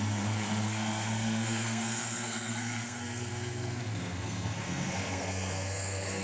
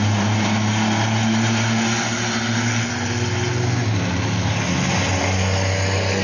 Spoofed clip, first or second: first